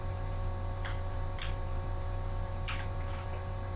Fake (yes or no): yes